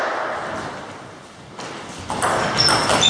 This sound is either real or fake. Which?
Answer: real